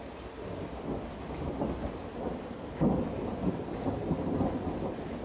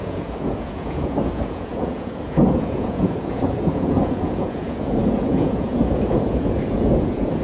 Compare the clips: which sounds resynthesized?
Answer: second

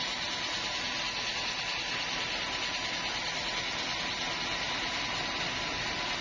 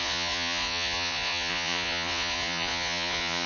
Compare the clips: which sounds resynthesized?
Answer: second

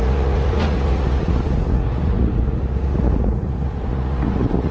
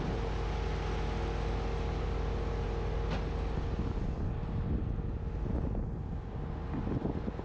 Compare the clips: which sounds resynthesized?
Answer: first